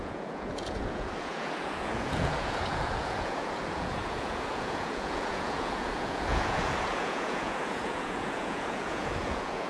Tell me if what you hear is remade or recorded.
remade